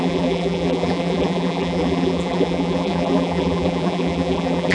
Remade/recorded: remade